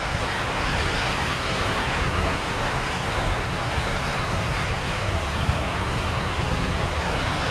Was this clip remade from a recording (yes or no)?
yes